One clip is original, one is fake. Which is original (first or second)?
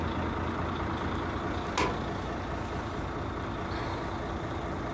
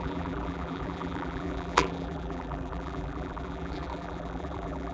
first